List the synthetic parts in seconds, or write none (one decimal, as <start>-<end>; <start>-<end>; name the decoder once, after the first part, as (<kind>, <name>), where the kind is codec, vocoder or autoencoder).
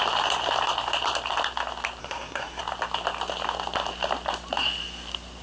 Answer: 2.0-2.6 (codec, SNAC)